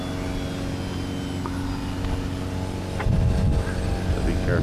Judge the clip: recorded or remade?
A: recorded